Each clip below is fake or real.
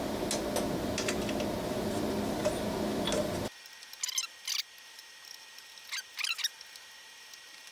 real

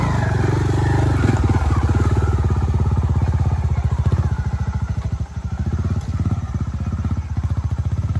real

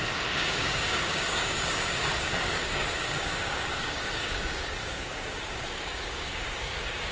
fake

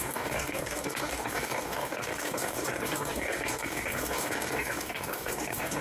fake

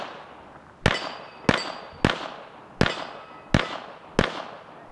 real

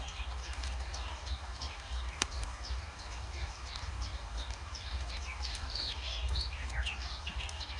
fake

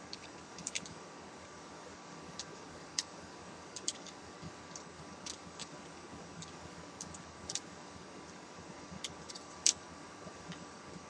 fake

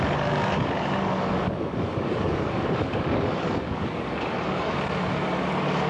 fake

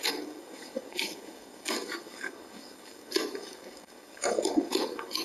fake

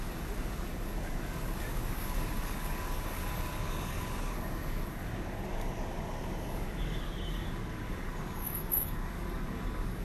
fake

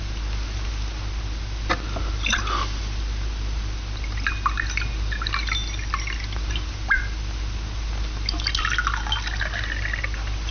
real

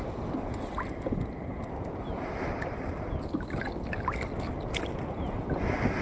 real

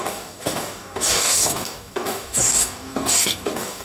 fake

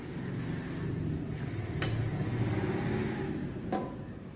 real